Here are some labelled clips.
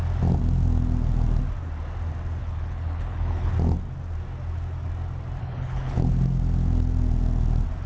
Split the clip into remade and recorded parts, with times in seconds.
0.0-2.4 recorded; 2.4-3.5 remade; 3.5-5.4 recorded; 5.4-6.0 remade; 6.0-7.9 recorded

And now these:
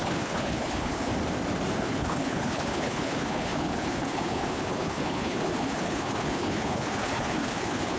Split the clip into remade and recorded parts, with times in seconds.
0.0-1.1 remade; 1.1-1.8 recorded; 1.8-8.0 remade